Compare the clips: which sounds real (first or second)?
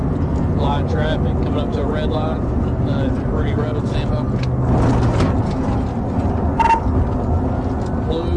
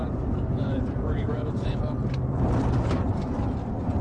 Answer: first